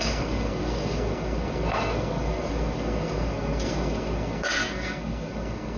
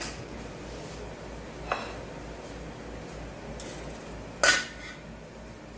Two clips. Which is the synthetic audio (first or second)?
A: first